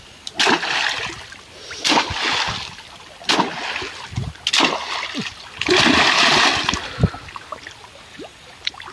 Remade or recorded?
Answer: recorded